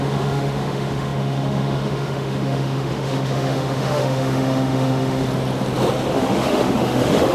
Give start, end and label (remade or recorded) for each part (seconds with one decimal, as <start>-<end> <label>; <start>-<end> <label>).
0.0-5.2 remade; 5.2-6.1 recorded; 6.1-7.3 remade